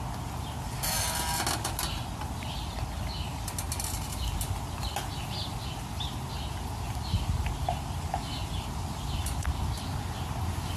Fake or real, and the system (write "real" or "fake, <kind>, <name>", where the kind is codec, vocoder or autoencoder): real